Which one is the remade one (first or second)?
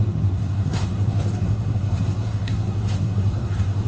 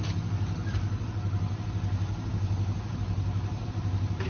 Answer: first